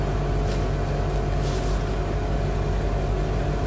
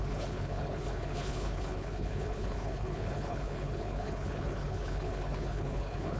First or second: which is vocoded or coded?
second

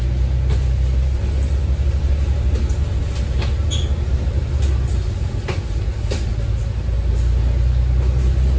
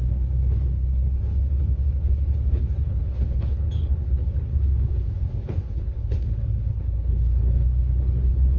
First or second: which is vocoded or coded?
second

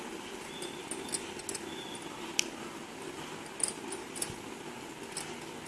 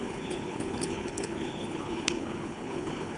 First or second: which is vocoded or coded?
second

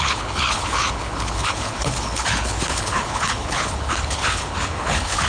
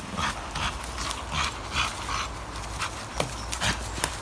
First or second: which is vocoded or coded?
first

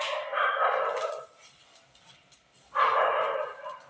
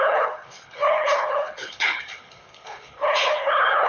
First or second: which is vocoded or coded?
second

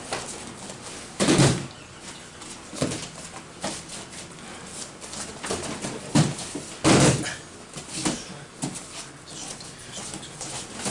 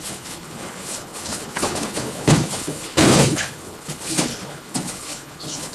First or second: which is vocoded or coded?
second